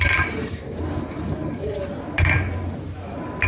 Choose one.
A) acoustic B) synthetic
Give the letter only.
A